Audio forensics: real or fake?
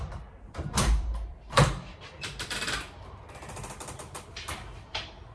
fake